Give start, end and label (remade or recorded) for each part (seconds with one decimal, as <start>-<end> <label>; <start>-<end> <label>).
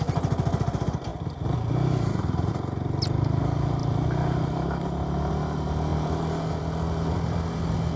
0.0-8.0 recorded